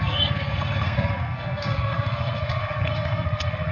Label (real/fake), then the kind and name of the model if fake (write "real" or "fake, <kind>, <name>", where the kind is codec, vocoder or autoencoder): fake, codec, SNAC